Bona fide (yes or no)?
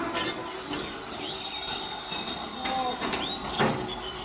yes